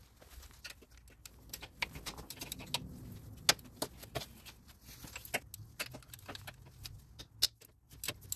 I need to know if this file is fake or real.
real